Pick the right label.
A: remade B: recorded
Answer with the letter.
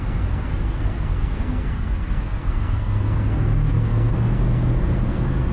A